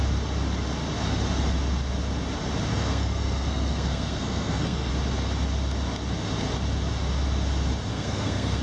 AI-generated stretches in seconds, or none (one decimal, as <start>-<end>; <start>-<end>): 2.7-4.9; 7.9-8.6